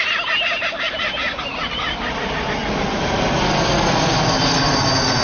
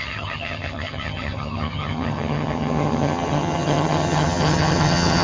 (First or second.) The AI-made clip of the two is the second